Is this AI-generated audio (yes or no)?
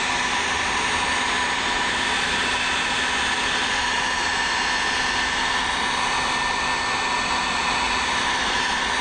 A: no